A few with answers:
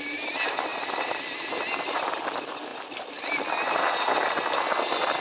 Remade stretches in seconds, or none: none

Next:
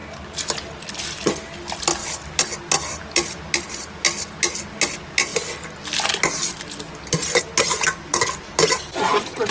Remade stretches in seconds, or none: none

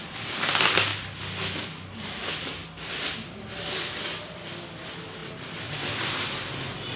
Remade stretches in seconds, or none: none

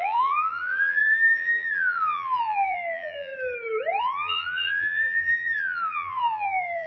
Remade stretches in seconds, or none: 0.0-3.3 (vocoder, BigVGAN v2); 4.0-6.9